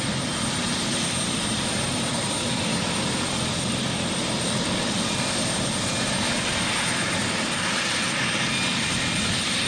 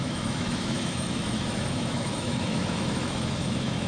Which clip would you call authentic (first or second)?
first